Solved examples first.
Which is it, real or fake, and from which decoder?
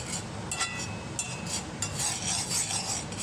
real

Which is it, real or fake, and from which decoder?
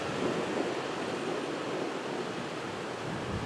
real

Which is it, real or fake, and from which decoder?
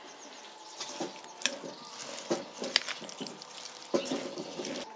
real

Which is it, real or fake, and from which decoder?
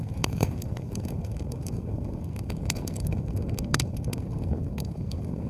fake, codec, SNAC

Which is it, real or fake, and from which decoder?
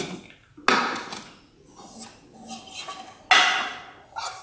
real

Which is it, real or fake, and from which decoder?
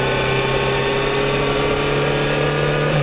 real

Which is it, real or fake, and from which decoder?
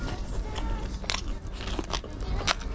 real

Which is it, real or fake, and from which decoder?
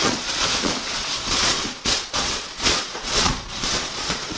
fake, vocoder, Vocos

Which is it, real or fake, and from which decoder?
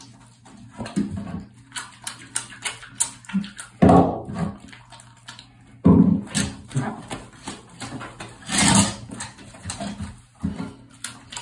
real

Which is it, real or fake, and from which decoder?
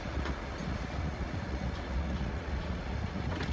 fake, vocoder, Vocos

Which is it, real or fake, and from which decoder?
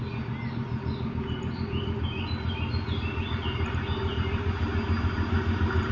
real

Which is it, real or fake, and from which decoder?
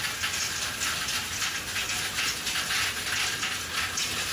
real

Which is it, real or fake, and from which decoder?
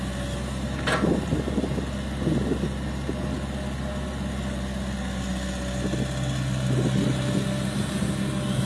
real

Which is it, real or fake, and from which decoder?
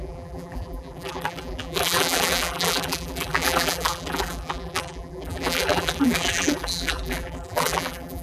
fake, vocoder, BigVGAN v2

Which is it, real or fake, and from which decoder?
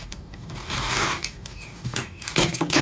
fake, codec, DAC